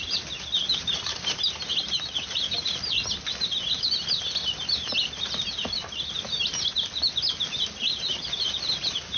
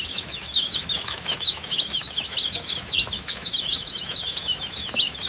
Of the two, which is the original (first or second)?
first